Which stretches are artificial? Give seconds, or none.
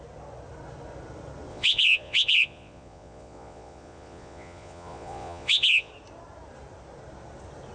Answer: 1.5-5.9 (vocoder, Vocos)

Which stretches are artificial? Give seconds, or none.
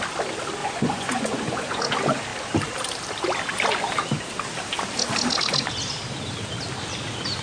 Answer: 0.6-1.8 (vocoder, Vocos)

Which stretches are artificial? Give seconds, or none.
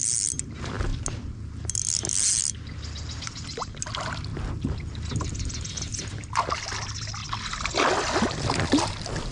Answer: none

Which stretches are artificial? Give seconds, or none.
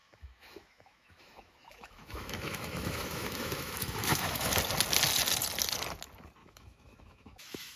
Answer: 0.0-4.5 (autoencoder, DAC-VAE); 6.4-7.8